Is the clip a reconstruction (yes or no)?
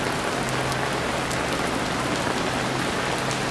no